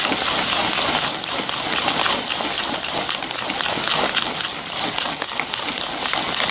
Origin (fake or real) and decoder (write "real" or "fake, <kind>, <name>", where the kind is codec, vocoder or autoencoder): real